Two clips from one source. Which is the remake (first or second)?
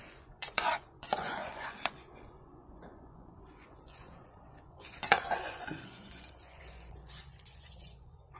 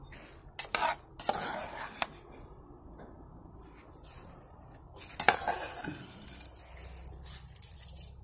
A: first